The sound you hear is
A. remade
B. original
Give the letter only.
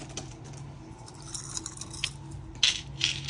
B